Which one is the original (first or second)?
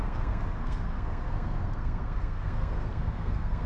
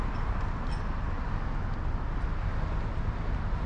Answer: second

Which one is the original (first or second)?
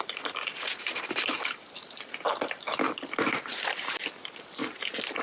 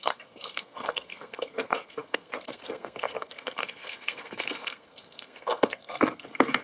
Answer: first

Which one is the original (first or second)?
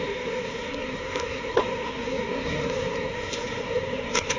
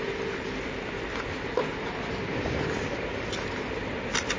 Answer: second